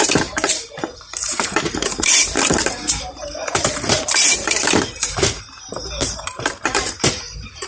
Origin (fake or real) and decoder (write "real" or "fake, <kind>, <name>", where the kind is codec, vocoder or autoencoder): fake, vocoder, BigVGAN v2